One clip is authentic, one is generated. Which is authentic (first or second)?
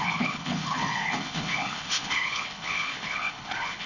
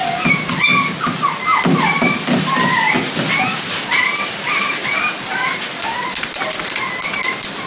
second